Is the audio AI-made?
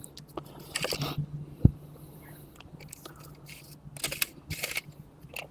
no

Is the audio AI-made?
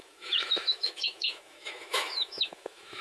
yes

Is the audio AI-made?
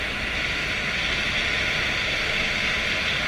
no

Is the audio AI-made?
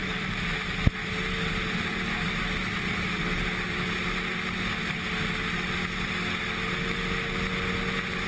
no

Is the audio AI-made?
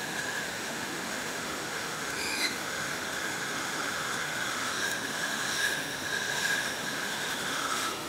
yes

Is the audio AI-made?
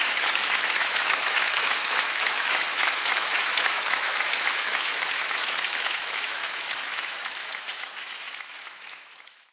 yes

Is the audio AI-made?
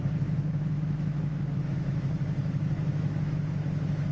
yes